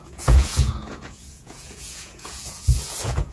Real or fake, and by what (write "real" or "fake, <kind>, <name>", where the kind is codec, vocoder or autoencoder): fake, vocoder, Vocos